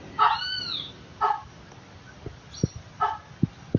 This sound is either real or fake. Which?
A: real